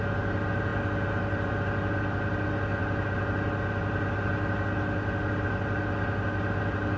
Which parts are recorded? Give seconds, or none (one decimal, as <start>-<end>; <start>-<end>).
0.0-7.0